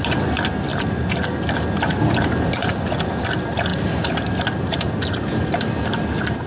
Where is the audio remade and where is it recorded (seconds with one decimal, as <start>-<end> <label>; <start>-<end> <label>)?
0.0-3.7 recorded; 3.7-4.3 remade; 4.3-6.5 recorded